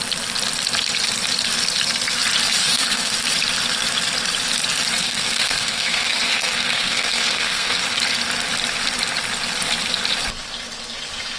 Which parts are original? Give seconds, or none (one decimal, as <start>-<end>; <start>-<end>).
0.0-2.6; 3.1-5.0; 7.8-11.4